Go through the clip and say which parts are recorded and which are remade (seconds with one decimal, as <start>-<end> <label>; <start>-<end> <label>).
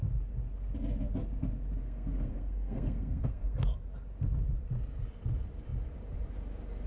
0.0-1.8 recorded; 1.8-3.7 remade; 3.7-6.9 recorded